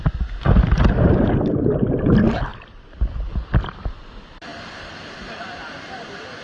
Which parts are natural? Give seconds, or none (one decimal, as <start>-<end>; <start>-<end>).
0.0-2.5; 3.7-4.5; 5.1-6.4